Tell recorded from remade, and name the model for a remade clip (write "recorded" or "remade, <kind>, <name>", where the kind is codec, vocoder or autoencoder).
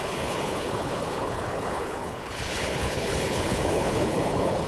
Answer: remade, codec, HILCodec